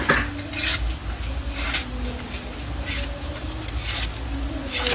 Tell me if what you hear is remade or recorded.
recorded